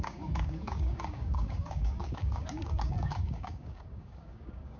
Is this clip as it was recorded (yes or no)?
no